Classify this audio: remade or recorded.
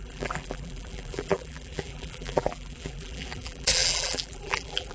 remade